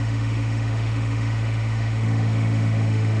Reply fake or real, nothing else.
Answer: fake